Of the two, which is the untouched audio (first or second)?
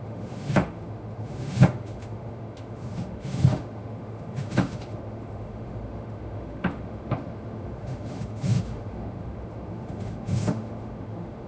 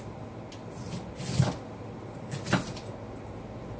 second